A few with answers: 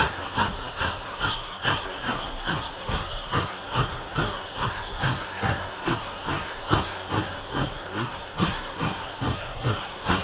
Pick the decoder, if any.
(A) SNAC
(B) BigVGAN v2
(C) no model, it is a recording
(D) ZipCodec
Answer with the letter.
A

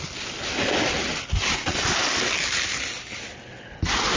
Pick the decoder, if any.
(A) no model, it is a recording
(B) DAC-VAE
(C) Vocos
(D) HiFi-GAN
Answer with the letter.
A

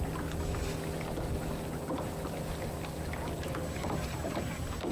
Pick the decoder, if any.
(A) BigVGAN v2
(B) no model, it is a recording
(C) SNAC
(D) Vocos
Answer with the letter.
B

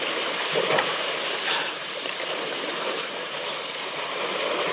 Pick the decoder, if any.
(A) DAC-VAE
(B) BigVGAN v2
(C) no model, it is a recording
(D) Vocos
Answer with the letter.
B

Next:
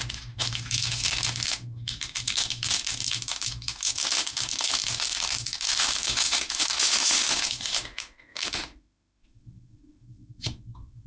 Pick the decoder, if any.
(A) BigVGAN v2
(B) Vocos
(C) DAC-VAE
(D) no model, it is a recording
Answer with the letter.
C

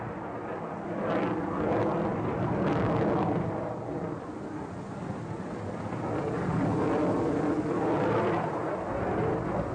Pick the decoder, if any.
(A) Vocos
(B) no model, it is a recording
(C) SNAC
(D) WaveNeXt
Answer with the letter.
B